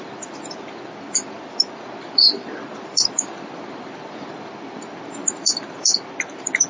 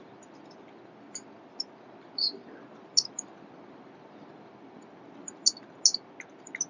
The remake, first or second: first